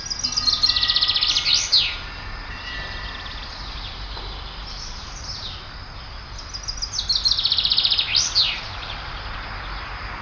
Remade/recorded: recorded